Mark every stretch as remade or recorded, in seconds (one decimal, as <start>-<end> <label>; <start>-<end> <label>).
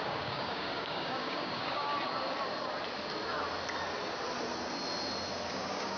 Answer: 0.0-1.9 remade; 1.9-5.5 recorded; 5.5-6.0 remade